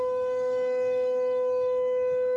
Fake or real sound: fake